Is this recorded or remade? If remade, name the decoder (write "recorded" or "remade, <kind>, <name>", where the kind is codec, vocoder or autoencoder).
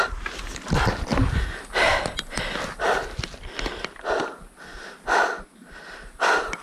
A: recorded